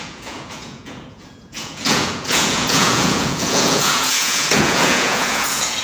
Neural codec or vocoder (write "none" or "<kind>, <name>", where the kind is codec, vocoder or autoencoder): vocoder, Vocos